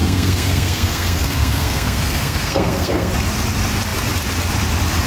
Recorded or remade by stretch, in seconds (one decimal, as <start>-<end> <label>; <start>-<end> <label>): 0.0-3.1 remade; 3.1-5.1 recorded